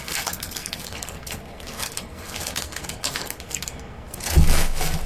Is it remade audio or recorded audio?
remade